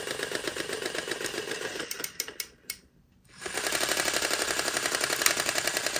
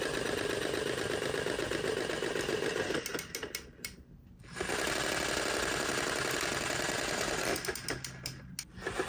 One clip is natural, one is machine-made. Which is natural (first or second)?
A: second